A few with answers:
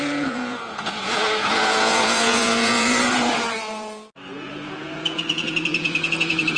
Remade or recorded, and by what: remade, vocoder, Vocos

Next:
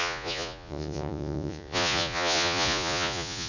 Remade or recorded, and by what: remade, vocoder, Vocos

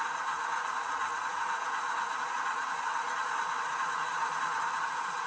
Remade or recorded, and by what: remade, vocoder, Vocos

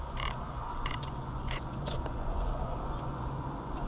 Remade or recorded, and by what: remade, vocoder, Vocos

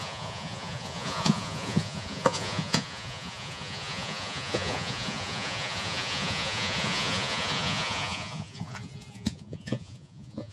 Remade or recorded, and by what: remade, vocoder, Vocos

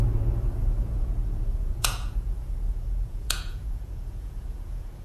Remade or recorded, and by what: remade, vocoder, Vocos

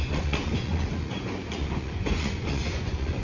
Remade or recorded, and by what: remade, vocoder, Vocos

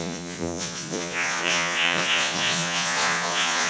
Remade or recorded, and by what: remade, vocoder, Vocos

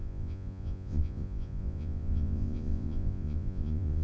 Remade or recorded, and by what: remade, vocoder, Vocos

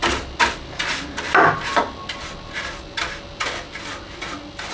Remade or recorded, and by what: recorded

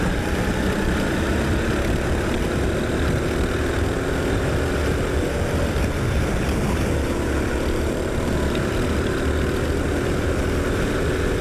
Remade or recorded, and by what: recorded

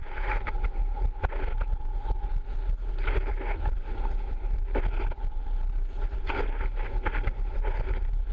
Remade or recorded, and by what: recorded